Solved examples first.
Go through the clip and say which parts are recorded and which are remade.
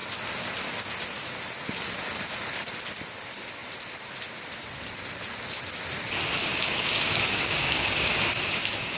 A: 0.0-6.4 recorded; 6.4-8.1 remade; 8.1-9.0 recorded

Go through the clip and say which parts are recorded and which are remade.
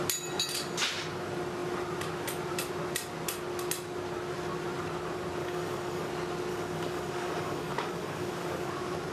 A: 0.0-5.4 recorded; 5.4-6.1 remade; 6.1-6.5 recorded; 6.5-8.7 remade; 8.7-9.1 recorded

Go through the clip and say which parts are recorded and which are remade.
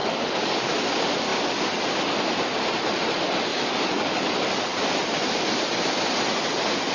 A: 0.0-0.7 remade; 0.7-3.5 recorded; 3.5-4.3 remade; 4.3-6.9 recorded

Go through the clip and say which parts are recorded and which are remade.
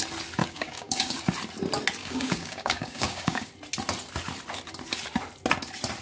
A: 0.0-0.4 recorded; 0.4-1.2 remade; 1.2-2.0 recorded; 2.0-3.5 remade; 3.5-6.0 recorded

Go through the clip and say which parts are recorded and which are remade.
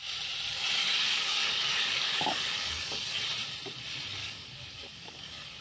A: 0.0-0.8 recorded; 0.8-3.2 remade; 3.2-4.2 recorded; 4.2-5.6 remade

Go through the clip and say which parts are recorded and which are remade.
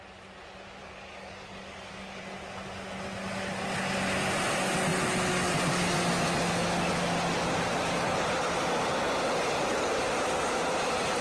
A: 0.0-0.8 recorded; 0.8-2.2 remade; 2.2-11.2 recorded